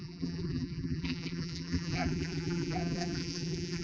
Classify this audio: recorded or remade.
remade